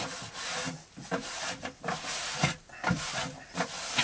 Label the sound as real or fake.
real